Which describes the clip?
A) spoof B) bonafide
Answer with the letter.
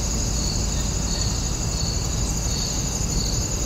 B